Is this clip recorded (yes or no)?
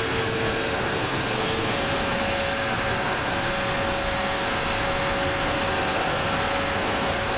no